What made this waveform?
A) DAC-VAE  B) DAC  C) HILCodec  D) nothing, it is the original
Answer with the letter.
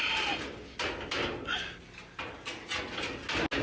D